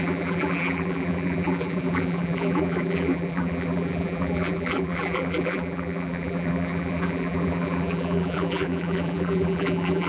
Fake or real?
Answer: fake